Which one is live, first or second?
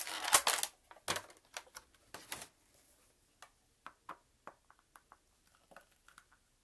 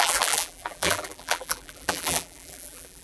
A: first